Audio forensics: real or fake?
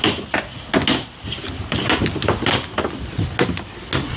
real